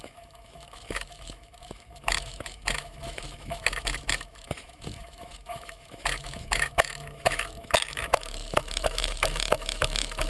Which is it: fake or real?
fake